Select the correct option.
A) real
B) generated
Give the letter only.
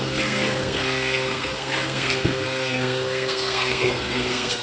B